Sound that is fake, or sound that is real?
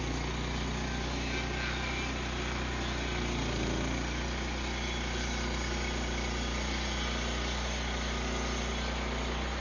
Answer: real